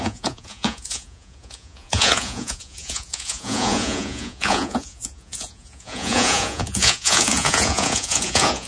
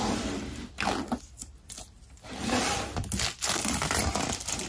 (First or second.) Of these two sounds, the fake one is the first